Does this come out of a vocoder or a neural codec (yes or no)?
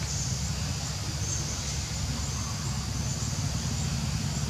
no